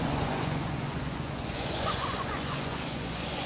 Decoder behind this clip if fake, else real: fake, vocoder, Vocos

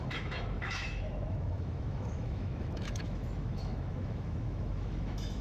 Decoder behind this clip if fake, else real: fake, autoencoder, DAC-VAE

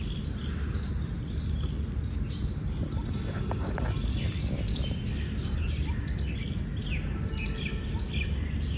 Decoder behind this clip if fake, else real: real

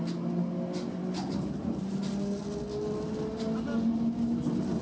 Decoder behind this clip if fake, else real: real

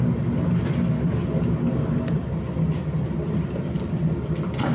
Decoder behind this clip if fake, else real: real